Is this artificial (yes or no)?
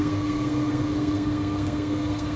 yes